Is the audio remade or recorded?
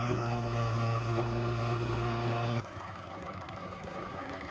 remade